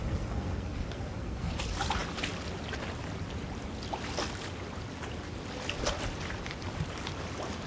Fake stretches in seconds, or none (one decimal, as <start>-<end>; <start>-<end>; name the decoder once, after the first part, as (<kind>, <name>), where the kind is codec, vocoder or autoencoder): 0.0-1.5 (codec, SNAC)